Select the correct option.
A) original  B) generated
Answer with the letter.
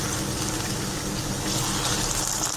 A